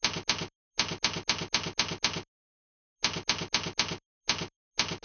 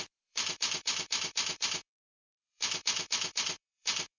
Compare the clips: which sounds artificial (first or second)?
second